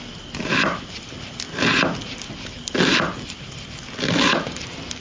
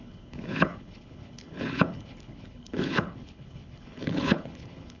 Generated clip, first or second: second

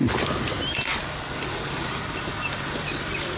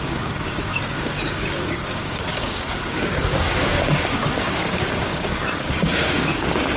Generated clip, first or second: second